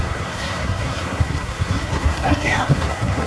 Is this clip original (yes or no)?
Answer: no